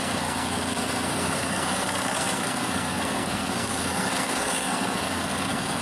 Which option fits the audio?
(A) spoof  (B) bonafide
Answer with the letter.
A